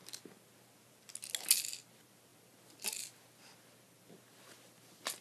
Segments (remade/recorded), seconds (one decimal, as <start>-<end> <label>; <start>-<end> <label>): 0.0-5.2 recorded